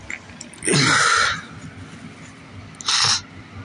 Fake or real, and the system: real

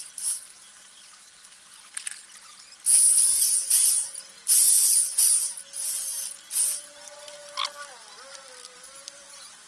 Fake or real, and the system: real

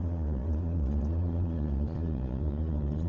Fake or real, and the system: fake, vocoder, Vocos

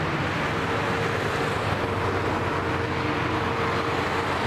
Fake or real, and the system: real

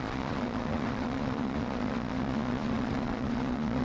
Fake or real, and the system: fake, vocoder, Vocos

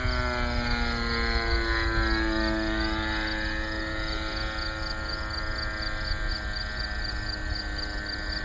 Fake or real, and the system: real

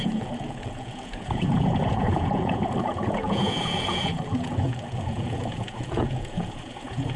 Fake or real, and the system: fake, vocoder, Vocos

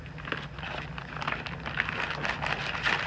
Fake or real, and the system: real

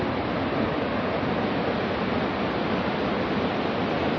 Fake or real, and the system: real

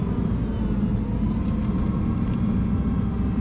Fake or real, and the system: real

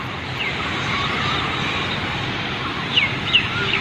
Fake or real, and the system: real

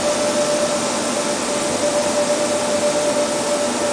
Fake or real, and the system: real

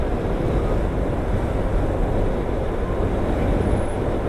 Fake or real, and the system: real